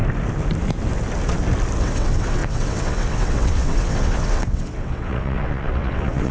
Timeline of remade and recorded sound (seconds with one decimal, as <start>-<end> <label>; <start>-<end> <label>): 0.0-1.8 recorded; 1.8-6.3 remade